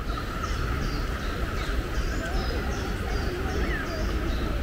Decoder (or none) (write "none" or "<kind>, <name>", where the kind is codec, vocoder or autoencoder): none